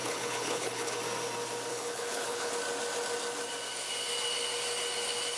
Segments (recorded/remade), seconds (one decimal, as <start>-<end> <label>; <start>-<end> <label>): 0.0-1.0 remade; 1.0-1.7 recorded; 1.7-2.5 remade; 2.5-5.4 recorded